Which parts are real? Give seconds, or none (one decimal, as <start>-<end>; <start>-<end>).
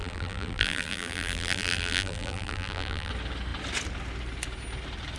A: 3.1-5.2